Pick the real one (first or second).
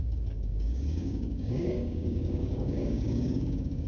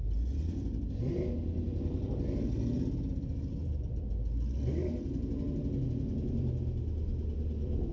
second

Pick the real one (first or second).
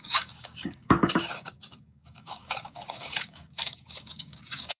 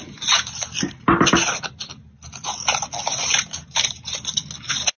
second